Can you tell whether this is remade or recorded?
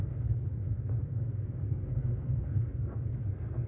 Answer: remade